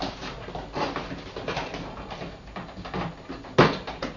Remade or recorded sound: recorded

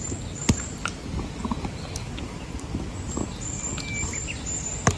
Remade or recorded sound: recorded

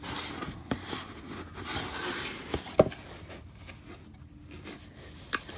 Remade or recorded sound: recorded